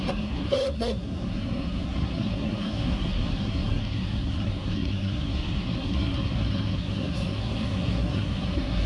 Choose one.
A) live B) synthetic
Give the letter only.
B